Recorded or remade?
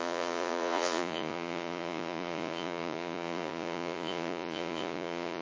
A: remade